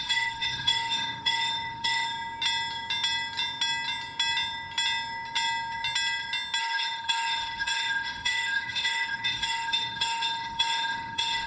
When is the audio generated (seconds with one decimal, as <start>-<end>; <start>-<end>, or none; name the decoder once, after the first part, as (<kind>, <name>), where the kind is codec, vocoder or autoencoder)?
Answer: 0.0-2.1 (autoencoder, DAC-VAE); 6.6-11.5